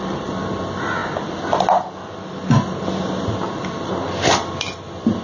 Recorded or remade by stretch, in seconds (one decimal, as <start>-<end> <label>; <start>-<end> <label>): 0.0-5.2 recorded